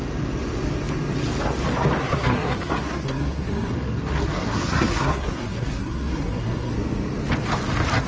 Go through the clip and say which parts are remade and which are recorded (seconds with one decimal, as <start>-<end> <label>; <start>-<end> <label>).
0.0-2.0 recorded; 2.0-6.7 remade; 6.7-8.1 recorded